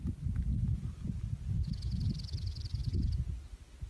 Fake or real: real